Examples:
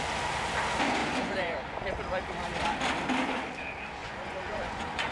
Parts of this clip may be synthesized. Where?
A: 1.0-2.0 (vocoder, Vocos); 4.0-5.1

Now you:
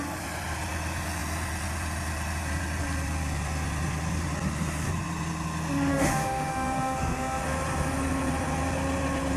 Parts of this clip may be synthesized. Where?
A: 5.9-7.4 (autoencoder, DAC-VAE)

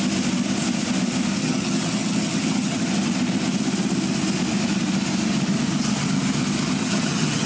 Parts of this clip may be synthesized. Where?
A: 1.4-2.9 (vocoder, HiFi-GAN); 6.8-7.5

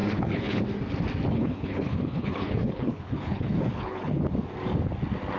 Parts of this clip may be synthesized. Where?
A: 0.0-0.6 (codec, HILCodec); 1.3-4.2